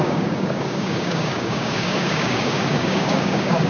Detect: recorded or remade remade